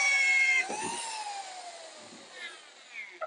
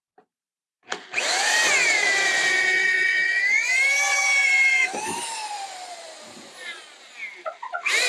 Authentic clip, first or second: first